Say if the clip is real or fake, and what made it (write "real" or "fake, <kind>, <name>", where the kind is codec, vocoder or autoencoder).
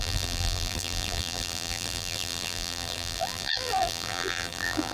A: fake, vocoder, BigVGAN v2